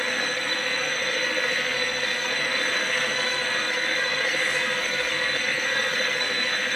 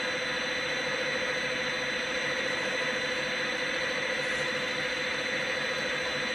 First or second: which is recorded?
second